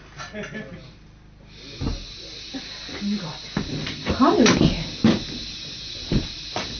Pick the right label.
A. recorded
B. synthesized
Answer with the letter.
A